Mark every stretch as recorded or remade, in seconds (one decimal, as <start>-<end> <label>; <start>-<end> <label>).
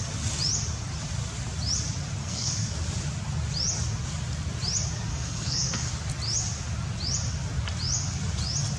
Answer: 0.0-2.2 recorded; 2.2-2.7 remade; 2.7-5.1 recorded; 5.1-5.9 remade; 5.9-8.8 recorded